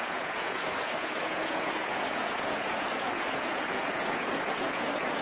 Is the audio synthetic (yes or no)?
yes